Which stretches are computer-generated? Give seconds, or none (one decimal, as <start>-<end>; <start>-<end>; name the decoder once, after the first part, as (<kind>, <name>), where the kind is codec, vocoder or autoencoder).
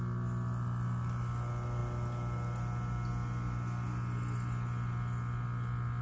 none